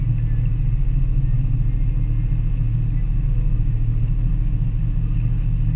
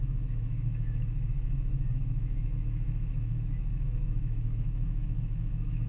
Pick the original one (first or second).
first